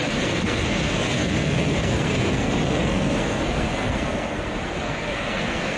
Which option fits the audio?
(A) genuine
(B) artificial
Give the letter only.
B